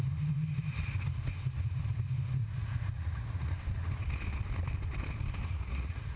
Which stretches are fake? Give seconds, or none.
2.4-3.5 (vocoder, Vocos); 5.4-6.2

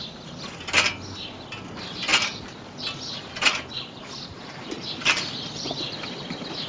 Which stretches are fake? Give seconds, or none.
none

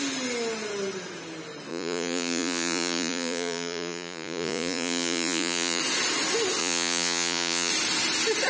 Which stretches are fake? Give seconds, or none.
1.7-5.8 (vocoder, Vocos); 6.6-7.7

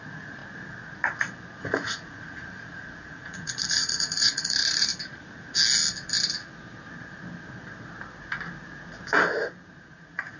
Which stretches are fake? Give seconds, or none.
0.0-0.4 (vocoder, Vocos); 1.6-4.9; 9.9-10.4

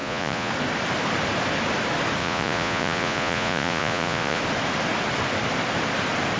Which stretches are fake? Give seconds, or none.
0.0-0.5 (vocoder, Vocos); 2.2-4.4